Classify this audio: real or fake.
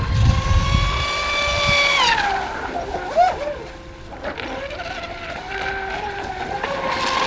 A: real